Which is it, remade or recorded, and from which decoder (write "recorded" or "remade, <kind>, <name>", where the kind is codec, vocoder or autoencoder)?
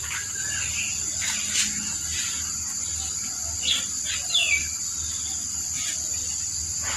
recorded